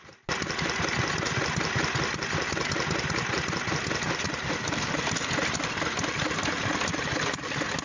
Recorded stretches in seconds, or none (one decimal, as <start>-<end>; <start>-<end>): 0.0-7.8